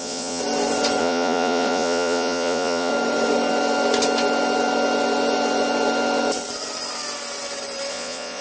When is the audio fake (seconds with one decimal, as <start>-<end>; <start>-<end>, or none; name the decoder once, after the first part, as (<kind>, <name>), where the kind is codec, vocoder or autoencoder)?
0.0-0.4 (vocoder, Vocos); 1.0-2.9; 7.9-8.4